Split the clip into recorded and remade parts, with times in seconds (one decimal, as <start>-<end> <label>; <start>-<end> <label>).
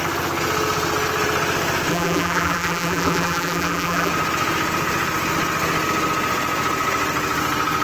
0.0-1.9 recorded; 1.9-4.1 remade; 4.1-7.8 recorded